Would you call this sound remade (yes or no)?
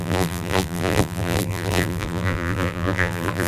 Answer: yes